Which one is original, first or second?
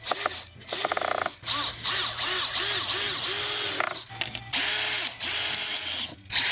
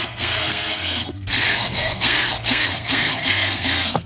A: first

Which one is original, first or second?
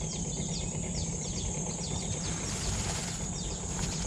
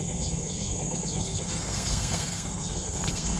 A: first